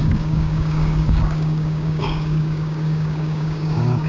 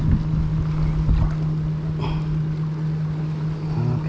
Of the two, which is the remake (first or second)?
first